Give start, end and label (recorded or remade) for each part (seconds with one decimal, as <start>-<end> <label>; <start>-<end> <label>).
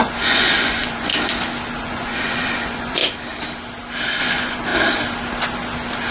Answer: 0.0-1.1 remade; 1.1-1.8 recorded; 1.8-3.0 remade; 3.0-4.2 recorded; 4.2-4.7 remade; 4.7-6.1 recorded